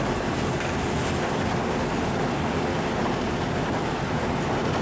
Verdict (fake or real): real